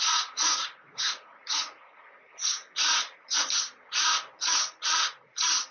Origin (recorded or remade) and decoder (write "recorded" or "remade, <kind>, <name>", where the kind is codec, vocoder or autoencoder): remade, vocoder, Vocos